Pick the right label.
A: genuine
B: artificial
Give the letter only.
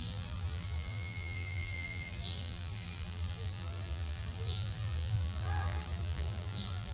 B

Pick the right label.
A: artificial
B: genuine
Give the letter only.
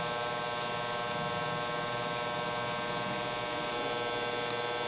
B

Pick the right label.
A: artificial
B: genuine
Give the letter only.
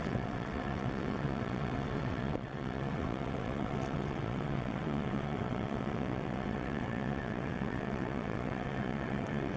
A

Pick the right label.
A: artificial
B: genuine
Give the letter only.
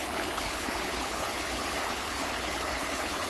A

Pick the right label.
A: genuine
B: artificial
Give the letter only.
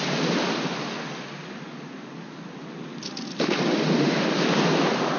A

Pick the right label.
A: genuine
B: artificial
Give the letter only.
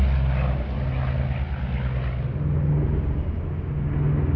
A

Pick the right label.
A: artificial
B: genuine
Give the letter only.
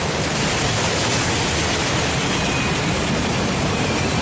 B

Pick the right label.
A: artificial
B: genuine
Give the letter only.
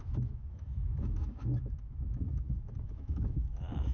A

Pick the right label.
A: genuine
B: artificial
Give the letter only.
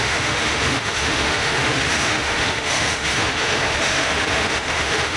B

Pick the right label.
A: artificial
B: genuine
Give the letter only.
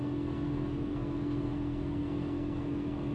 A